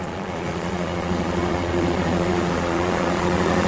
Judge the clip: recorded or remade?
remade